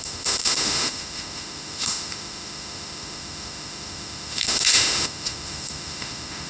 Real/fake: fake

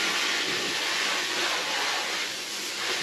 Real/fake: fake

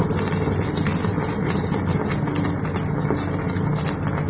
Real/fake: real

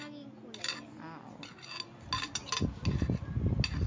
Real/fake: real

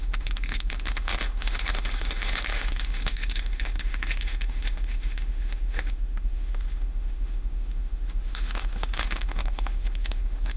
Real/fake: fake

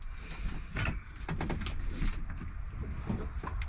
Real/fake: real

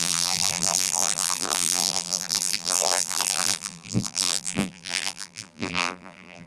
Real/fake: fake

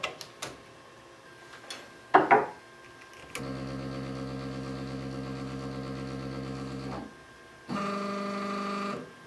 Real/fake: real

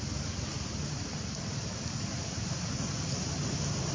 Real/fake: fake